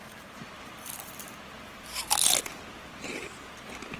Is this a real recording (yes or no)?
no